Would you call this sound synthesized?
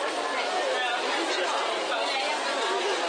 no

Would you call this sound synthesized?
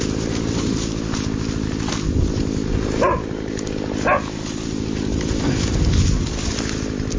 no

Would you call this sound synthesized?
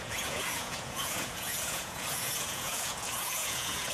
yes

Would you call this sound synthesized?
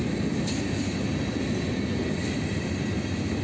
no